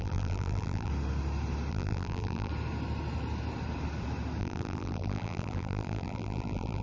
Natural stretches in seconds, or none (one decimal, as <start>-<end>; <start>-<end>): 0.9-1.7; 2.5-4.4